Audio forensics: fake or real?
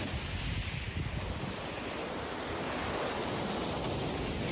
real